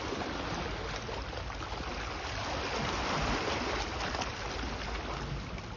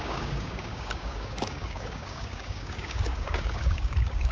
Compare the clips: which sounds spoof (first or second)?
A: second